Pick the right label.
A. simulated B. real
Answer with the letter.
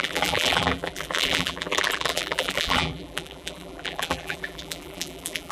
A